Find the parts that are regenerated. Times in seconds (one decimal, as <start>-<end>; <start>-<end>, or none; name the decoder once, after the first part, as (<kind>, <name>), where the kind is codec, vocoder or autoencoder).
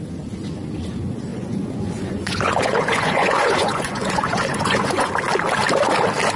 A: 1.3-5.1 (vocoder, Vocos)